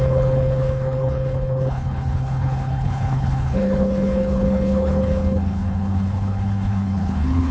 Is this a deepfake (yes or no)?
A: yes